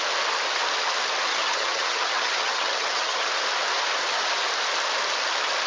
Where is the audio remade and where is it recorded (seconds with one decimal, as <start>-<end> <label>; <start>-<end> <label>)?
0.0-1.3 recorded; 1.3-3.3 remade; 3.3-5.7 recorded